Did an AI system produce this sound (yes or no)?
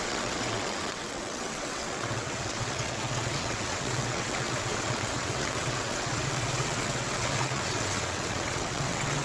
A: yes